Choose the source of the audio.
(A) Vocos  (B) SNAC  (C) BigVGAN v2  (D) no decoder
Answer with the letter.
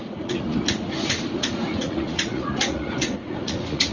A